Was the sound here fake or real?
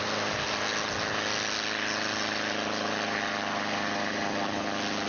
real